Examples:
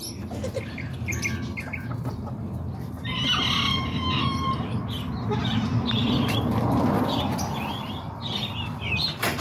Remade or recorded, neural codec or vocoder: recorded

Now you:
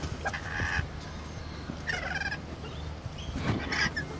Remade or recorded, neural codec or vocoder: recorded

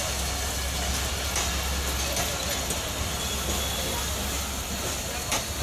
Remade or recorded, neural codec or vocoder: recorded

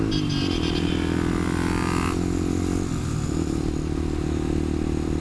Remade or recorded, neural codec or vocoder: recorded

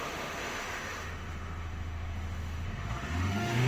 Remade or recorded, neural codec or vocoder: remade, autoencoder, DAC-VAE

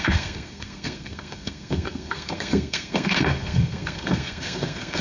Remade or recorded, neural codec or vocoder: remade, codec, SNAC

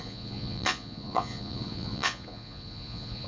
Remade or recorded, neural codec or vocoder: remade, vocoder, Vocos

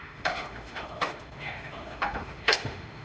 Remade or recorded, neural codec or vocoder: remade, autoencoder, DAC-VAE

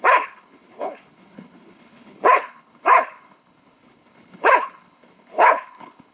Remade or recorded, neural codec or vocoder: remade, codec, HILCodec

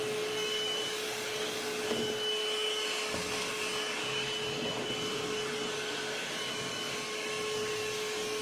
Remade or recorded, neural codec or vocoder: remade, codec, DAC